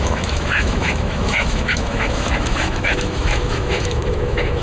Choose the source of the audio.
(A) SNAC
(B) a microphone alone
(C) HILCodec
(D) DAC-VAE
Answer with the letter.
D